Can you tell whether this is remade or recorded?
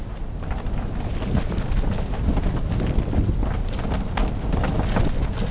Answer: recorded